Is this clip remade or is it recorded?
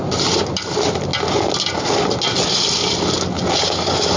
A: recorded